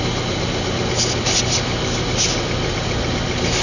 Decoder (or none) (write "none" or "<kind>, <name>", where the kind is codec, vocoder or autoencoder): none